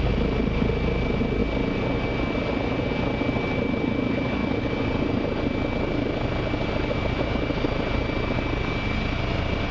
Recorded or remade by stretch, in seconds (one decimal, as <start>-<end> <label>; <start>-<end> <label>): 0.0-9.7 recorded